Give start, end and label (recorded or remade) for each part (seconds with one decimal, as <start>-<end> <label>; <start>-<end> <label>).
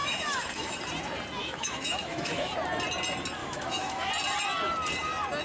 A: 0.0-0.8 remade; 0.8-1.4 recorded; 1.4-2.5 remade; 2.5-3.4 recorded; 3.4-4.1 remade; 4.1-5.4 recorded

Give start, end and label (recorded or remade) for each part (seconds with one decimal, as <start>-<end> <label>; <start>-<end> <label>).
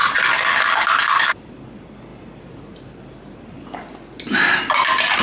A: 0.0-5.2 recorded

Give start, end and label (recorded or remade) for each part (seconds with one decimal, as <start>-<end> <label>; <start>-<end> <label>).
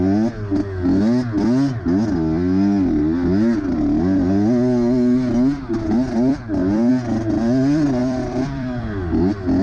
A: 0.0-6.3 recorded; 6.3-6.9 remade; 6.9-8.0 recorded; 8.0-8.8 remade; 8.8-9.6 recorded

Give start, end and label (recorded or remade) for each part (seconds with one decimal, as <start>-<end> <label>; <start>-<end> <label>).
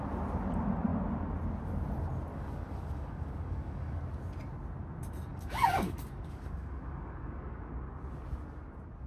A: 0.0-2.3 recorded; 2.3-4.0 remade; 4.0-5.3 recorded; 5.3-7.7 remade; 7.7-9.1 recorded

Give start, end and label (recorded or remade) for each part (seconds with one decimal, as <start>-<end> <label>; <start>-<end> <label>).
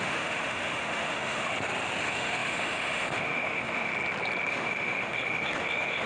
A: 0.0-1.5 remade; 1.5-2.0 recorded; 2.0-3.9 remade; 3.9-4.5 recorded; 4.5-6.1 remade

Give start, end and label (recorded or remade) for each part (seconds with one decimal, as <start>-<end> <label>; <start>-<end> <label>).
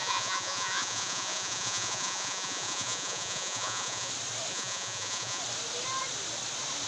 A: 0.0-4.1 remade; 4.1-4.5 recorded; 4.5-5.4 remade; 5.4-6.9 recorded